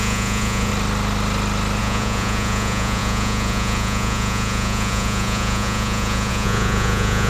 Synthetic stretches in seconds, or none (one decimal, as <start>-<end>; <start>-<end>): 0.0-0.7; 1.8-7.3